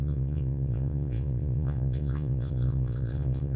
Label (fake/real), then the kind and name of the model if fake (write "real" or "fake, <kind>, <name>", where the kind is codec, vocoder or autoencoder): fake, vocoder, Vocos